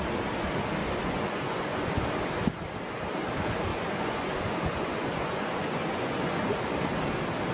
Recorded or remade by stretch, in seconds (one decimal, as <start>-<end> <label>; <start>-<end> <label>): 0.0-0.8 recorded; 0.8-1.9 remade; 1.9-3.7 recorded; 3.7-6.5 remade; 6.5-7.5 recorded